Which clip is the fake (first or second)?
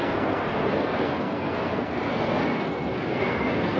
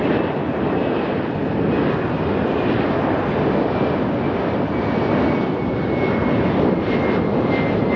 first